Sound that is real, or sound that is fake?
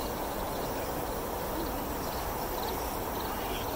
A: real